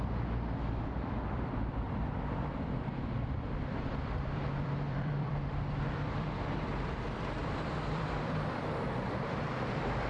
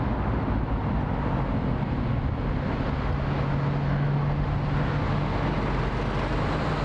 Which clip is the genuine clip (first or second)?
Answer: second